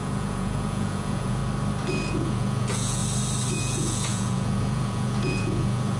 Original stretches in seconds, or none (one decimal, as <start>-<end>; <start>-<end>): 1.4-2.1; 3.0-3.6